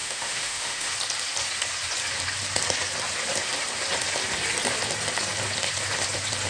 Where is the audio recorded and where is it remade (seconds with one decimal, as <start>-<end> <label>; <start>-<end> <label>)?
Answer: 0.0-0.9 remade; 0.9-6.5 recorded